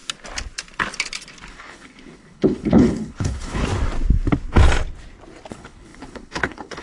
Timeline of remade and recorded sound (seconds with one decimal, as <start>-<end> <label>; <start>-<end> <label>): 0.0-1.5 recorded; 1.5-3.6 remade; 3.6-5.5 recorded; 5.5-6.8 remade